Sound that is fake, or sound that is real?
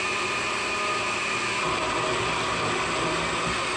real